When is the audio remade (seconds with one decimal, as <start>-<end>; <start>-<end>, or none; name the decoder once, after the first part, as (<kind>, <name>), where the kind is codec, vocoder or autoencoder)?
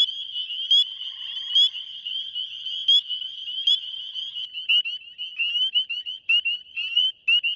2.8-3.7 (vocoder, BigVGAN v2)